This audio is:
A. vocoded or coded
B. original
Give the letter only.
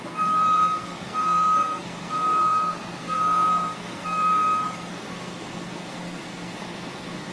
A